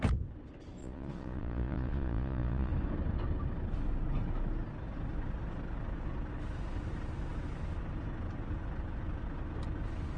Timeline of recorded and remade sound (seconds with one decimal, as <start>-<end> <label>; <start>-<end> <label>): 0.0-0.8 recorded; 0.8-2.7 remade; 2.7-10.2 recorded